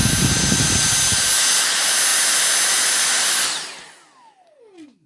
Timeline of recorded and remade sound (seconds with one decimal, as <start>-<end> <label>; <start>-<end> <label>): 0.0-5.1 recorded